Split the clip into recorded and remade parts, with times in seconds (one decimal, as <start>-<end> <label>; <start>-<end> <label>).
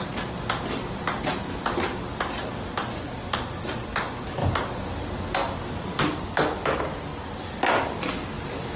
0.0-8.8 recorded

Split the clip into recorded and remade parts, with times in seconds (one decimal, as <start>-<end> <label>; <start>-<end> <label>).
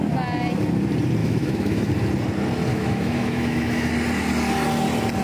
0.0-1.2 recorded; 1.2-1.9 remade; 1.9-2.7 recorded; 2.7-3.9 remade; 3.9-5.2 recorded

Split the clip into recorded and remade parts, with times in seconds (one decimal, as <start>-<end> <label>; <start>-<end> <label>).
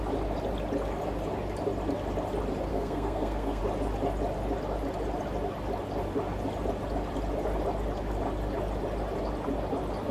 0.0-2.7 recorded; 2.7-3.6 remade; 3.6-10.1 recorded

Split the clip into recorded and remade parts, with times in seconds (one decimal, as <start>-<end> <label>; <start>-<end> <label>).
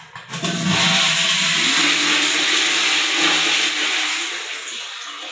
0.0-5.3 recorded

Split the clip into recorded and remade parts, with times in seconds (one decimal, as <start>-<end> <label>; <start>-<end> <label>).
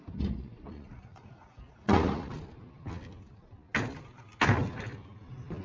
0.0-2.3 remade; 2.3-5.6 recorded